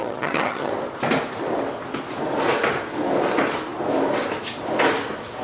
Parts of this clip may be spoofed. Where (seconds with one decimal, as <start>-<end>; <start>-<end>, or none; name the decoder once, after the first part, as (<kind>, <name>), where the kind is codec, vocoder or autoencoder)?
0.0-0.7 (vocoder, HiFi-GAN)